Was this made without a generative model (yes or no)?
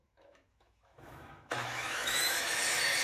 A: no